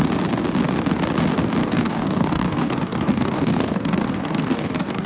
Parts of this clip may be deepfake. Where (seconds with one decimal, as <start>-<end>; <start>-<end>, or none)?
1.6-5.1